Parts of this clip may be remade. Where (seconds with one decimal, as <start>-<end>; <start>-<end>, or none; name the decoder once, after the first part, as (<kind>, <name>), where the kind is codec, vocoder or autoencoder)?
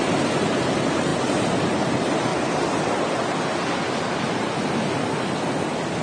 0.0-2.3 (vocoder, BigVGAN v2)